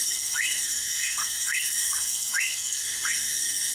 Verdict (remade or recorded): remade